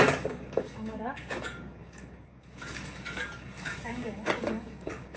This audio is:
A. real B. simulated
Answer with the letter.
B